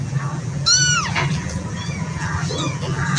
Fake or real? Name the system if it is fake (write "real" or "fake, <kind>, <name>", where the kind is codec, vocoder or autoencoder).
fake, vocoder, BigVGAN v2